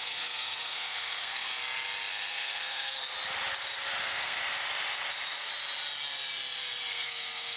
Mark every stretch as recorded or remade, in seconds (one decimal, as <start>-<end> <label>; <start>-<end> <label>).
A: 0.0-1.5 remade; 1.5-2.1 recorded; 2.1-3.0 remade; 3.0-4.0 recorded; 4.0-4.4 remade; 4.4-6.9 recorded; 6.9-7.6 remade

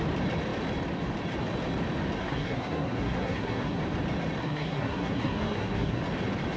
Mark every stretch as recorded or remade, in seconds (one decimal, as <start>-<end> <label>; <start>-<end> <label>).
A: 0.0-2.2 recorded; 2.2-3.8 remade; 3.8-4.4 recorded; 4.4-6.0 remade; 6.0-6.6 recorded